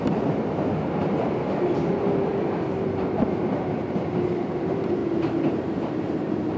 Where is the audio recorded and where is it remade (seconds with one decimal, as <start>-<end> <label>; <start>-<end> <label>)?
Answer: 0.0-2.3 remade; 2.3-3.5 recorded; 3.5-6.6 remade